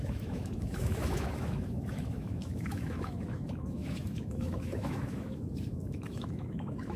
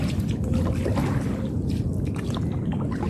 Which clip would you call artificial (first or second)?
first